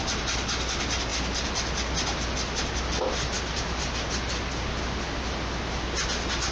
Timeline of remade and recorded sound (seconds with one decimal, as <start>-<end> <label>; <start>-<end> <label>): 0.0-6.5 recorded